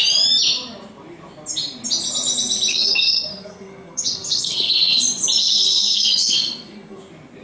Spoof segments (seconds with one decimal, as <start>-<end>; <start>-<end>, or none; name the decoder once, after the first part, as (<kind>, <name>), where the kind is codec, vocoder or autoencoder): 2.7-5.0 (codec, SNAC); 5.4-7.0